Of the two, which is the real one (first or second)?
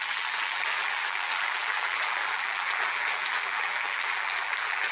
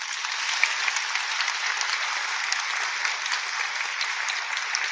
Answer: second